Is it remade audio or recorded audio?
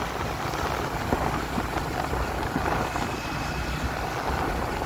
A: recorded